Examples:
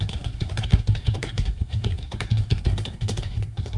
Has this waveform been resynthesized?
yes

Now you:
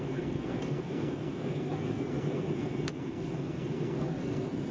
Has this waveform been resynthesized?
yes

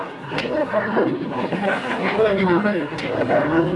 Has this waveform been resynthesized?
yes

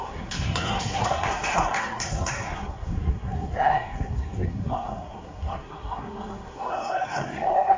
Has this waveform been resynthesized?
yes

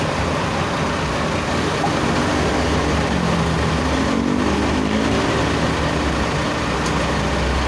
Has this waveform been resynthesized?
no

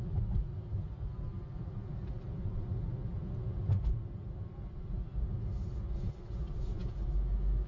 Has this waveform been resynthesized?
no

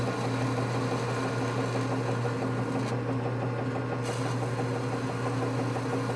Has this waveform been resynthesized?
no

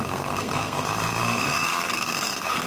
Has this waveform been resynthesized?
yes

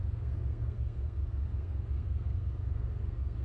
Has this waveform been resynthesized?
yes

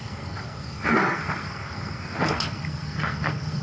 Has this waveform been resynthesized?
yes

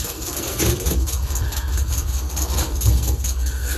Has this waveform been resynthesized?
yes